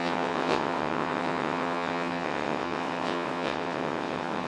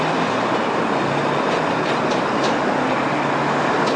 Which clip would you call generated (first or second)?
first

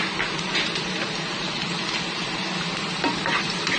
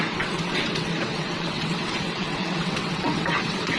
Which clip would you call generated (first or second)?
second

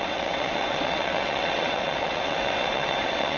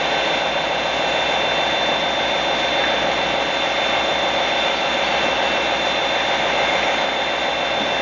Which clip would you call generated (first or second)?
first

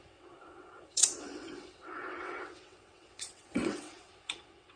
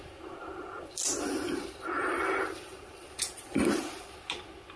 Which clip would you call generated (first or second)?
first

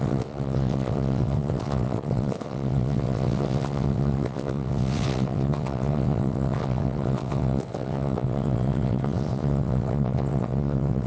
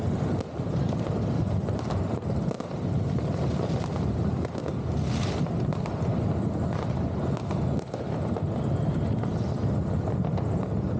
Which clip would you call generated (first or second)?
first